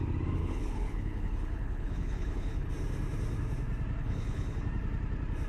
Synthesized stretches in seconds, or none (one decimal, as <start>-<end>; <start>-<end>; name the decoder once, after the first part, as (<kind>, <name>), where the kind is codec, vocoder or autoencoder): 0.4-2.7 (codec, HILCodec); 4.0-4.6